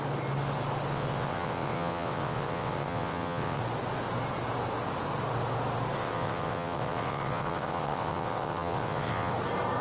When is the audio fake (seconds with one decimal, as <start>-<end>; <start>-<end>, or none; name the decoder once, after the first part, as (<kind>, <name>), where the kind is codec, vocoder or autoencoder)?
0.9-3.6 (vocoder, WaveNeXt); 6.0-9.3